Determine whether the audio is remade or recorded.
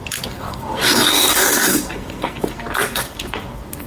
remade